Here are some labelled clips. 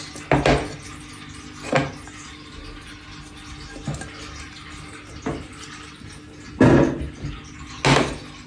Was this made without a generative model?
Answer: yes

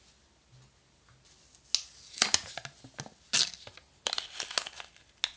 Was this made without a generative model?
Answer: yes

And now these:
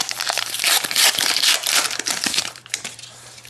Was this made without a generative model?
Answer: no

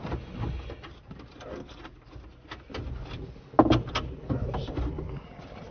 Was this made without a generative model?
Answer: yes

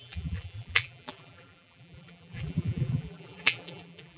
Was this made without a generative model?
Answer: no